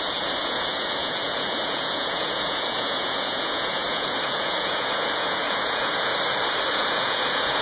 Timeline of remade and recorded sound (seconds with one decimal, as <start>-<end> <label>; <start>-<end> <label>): 0.0-6.1 remade; 6.1-6.7 recorded; 6.7-7.6 remade